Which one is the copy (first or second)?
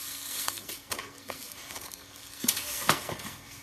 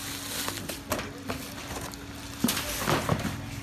first